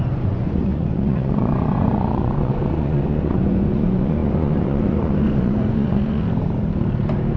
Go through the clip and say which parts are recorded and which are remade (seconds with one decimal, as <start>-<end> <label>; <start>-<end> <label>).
0.0-6.2 remade; 6.2-7.4 recorded